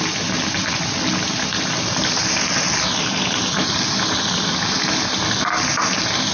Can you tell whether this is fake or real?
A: real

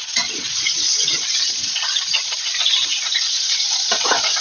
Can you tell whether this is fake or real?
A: fake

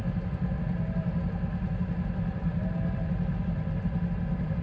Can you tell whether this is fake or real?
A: real